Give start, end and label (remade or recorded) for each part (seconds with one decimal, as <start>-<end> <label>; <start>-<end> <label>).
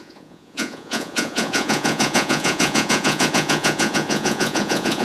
0.0-5.0 remade